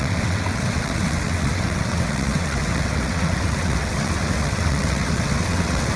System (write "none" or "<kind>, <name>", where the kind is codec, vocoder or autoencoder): vocoder, WaveNeXt